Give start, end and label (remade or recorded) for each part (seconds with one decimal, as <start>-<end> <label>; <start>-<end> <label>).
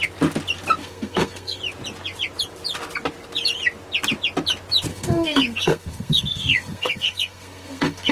0.0-0.8 recorded; 0.8-1.6 remade; 1.6-4.9 recorded; 4.9-8.1 remade